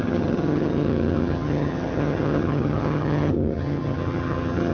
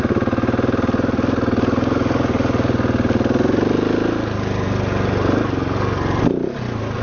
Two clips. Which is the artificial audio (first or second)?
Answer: first